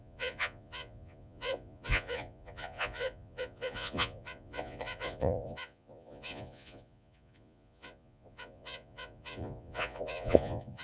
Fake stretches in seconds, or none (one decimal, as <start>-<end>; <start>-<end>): 0.0-10.8